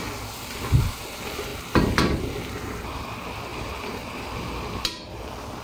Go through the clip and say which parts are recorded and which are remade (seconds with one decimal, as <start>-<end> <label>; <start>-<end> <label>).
0.0-5.6 recorded